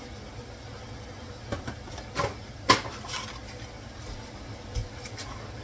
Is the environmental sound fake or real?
real